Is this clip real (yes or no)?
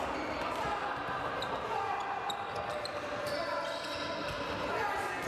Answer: yes